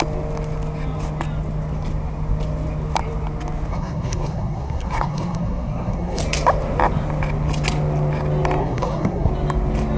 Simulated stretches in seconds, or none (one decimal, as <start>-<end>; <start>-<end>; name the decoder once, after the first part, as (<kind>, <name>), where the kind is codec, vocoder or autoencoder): 3.7-6.2 (codec, SNAC); 8.6-9.3